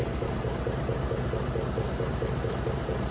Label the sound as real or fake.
fake